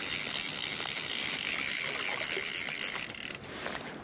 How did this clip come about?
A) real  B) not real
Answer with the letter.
A